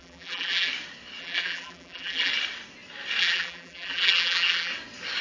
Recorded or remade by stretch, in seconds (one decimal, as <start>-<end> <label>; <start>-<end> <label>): 0.0-0.7 remade; 0.7-1.2 recorded; 1.2-2.3 remade; 2.3-3.2 recorded; 3.2-4.7 remade; 4.7-5.2 recorded